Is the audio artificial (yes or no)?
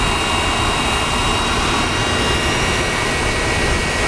no